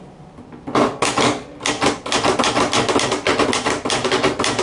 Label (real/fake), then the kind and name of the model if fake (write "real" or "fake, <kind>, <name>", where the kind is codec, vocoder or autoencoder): real